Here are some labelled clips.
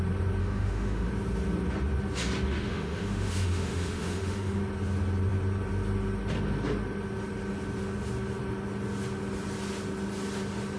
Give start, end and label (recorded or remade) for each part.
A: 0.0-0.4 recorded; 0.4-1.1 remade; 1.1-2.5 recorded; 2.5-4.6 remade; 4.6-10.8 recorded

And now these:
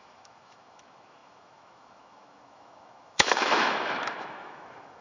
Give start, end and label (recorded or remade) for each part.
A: 0.0-5.0 remade